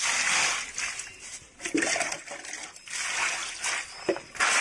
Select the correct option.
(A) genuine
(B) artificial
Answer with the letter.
A